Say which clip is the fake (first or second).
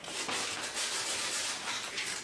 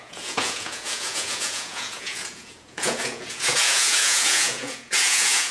second